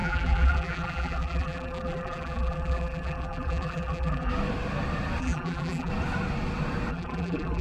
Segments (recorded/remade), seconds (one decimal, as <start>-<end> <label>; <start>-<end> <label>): 0.0-4.3 remade; 4.3-5.2 recorded; 5.2-5.9 remade; 5.9-6.9 recorded; 6.9-7.6 remade